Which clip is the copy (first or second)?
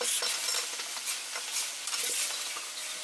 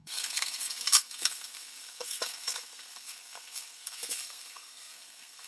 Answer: second